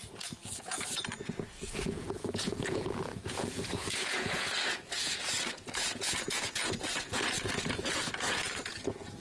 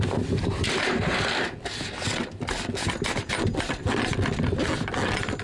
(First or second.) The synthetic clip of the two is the first